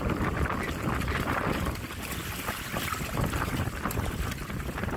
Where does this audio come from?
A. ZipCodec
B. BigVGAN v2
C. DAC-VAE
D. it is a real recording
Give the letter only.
D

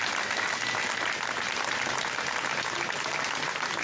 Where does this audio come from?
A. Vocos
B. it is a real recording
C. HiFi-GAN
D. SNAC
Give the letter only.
B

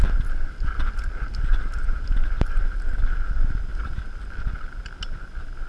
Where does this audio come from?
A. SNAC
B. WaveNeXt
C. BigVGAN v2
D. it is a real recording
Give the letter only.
D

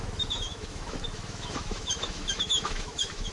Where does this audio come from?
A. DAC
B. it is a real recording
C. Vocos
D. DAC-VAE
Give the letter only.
D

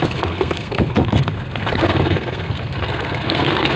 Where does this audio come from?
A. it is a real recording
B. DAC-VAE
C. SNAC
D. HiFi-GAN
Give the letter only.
C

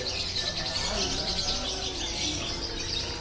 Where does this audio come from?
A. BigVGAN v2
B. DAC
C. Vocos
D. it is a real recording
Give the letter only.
D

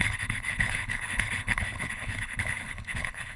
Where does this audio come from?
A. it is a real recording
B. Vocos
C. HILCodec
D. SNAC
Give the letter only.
C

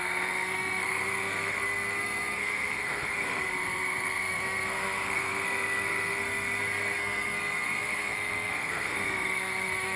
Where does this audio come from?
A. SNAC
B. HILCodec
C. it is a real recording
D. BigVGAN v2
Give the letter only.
A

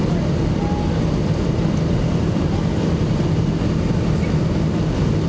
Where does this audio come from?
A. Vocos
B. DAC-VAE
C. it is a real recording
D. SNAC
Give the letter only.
C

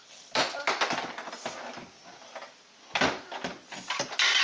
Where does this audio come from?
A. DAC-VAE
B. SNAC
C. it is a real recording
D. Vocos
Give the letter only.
C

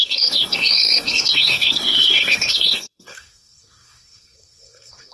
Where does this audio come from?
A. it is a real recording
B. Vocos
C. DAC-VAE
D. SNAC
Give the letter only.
D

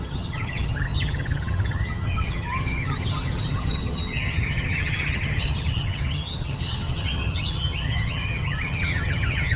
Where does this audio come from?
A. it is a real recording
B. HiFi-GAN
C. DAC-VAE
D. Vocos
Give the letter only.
B